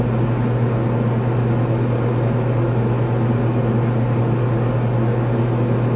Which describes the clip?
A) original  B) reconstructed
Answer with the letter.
A